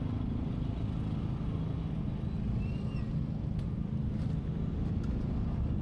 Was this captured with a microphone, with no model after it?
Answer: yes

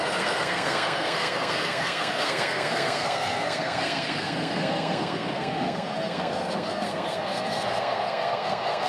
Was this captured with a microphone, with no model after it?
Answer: no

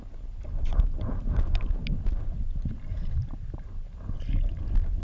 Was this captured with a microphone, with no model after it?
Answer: yes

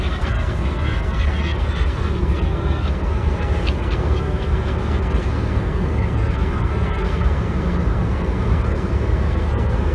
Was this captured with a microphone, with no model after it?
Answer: no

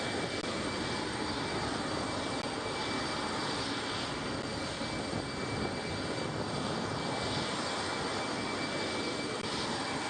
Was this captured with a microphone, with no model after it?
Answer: yes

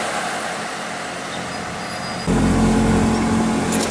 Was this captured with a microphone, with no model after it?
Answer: yes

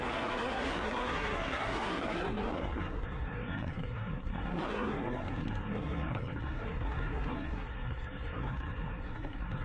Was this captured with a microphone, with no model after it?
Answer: no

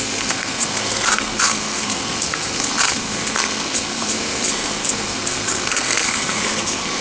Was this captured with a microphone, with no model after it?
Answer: no